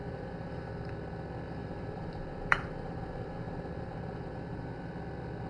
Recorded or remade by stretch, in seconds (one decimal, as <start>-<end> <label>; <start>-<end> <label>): 0.0-0.7 remade; 0.7-1.6 recorded; 1.6-4.9 remade; 4.9-5.5 recorded